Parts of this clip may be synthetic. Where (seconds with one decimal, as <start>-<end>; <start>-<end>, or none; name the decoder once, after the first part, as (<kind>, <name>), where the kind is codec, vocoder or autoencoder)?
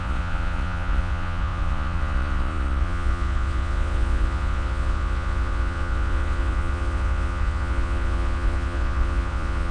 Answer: 0.0-9.7 (vocoder, Vocos)